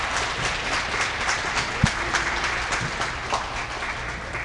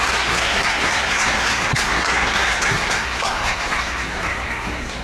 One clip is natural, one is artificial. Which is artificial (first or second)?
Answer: second